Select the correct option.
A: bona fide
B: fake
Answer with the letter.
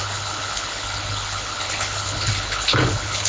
B